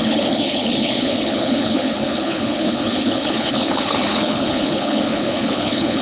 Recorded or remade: remade